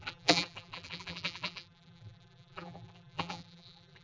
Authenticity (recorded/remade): remade